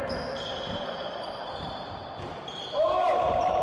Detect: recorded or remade remade